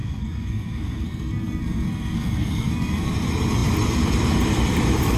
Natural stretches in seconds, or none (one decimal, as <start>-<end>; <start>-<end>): 3.1-5.2